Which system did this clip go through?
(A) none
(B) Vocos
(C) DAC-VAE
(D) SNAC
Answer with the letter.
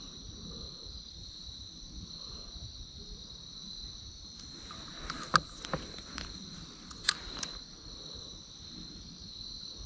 A